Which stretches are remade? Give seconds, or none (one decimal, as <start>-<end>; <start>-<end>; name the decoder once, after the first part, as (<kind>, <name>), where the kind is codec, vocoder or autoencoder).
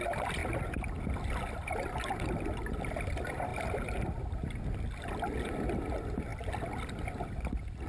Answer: none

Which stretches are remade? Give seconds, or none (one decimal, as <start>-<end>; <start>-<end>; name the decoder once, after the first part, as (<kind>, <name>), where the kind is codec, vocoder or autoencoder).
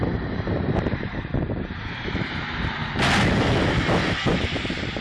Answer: 0.0-2.8 (vocoder, BigVGAN v2); 4.3-5.0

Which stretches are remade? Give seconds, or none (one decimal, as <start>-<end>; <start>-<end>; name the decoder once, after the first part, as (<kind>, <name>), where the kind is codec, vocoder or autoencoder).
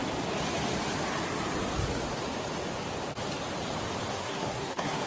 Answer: 4.1-5.1 (codec, SNAC)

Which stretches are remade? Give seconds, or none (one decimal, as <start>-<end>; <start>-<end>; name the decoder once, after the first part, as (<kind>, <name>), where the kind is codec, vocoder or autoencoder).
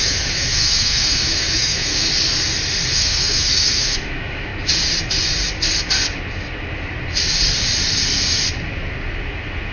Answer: 0.0-2.1 (autoencoder, DAC-VAE); 2.9-4.5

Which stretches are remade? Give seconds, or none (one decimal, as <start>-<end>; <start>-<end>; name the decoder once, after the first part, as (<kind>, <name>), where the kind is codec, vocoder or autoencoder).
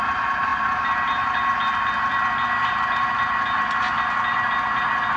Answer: none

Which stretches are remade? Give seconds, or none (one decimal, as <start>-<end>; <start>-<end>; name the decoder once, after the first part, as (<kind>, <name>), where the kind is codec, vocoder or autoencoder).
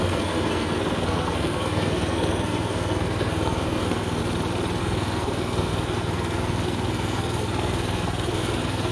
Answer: 0.0-4.2 (codec, SNAC); 4.8-8.9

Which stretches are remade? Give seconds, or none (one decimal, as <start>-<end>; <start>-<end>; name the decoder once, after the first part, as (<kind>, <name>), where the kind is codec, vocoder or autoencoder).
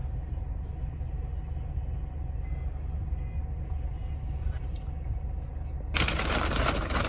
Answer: none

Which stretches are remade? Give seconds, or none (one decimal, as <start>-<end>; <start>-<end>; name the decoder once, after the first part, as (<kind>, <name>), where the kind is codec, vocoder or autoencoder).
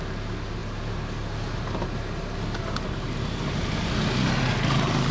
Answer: none